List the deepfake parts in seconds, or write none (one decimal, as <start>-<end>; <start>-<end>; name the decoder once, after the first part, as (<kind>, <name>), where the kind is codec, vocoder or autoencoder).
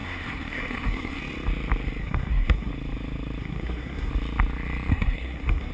0.0-1.2 (codec, SNAC); 2.0-2.7; 3.4-4.1; 4.9-5.7